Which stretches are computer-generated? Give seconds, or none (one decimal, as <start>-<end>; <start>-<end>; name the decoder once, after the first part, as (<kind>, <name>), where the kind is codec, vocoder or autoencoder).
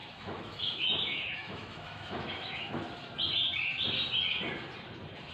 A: 0.0-2.8 (autoencoder, DAC-VAE)